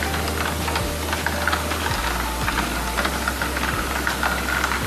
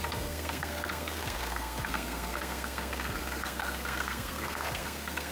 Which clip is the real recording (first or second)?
first